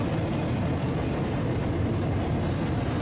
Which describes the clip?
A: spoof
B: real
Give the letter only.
B